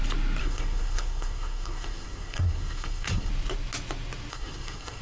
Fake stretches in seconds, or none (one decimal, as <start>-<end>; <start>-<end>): 0.4-3.3; 4.3-5.0